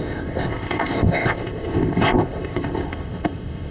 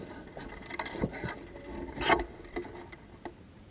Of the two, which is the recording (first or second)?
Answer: second